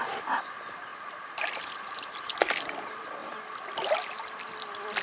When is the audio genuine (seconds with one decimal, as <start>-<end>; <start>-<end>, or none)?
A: 0.9-2.7